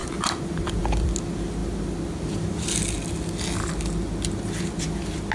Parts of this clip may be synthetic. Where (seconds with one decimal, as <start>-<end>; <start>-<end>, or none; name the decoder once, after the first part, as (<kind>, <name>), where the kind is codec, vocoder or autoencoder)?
none